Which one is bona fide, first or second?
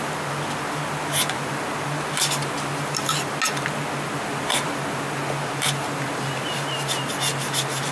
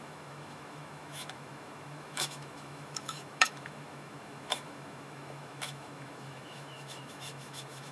first